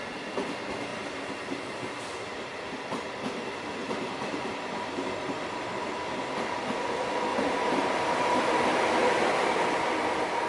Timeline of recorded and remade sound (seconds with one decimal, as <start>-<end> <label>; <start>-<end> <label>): 0.0-3.8 recorded; 3.8-5.9 remade; 5.9-7.3 recorded; 7.3-8.5 remade; 8.5-10.5 recorded